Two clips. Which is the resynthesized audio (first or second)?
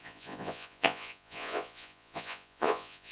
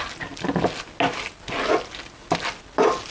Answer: first